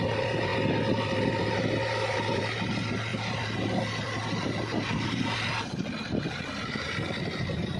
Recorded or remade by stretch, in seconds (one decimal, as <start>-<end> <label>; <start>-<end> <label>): 0.0-7.8 recorded